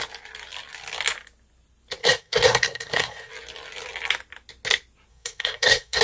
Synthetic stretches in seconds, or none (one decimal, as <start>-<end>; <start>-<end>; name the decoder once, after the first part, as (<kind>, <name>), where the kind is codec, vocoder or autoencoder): 2.0-3.3 (codec, SNAC); 5.1-6.0